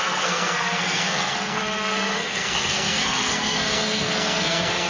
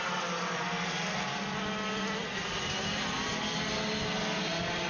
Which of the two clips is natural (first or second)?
second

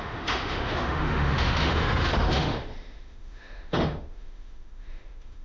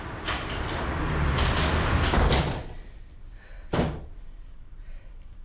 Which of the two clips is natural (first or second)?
second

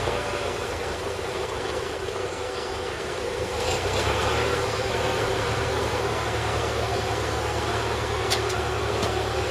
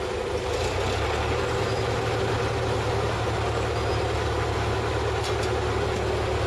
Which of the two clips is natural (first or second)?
second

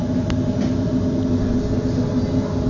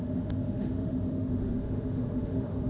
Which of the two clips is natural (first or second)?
first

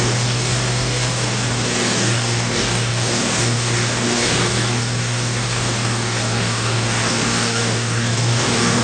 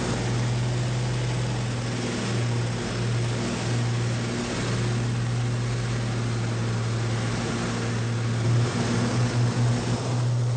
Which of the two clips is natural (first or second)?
second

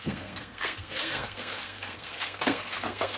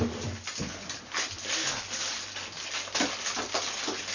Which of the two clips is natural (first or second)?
second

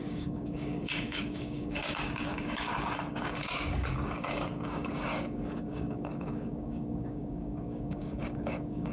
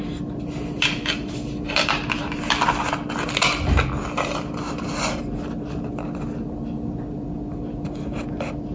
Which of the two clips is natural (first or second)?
second